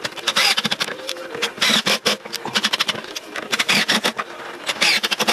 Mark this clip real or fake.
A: real